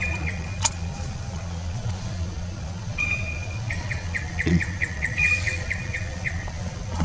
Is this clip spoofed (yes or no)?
yes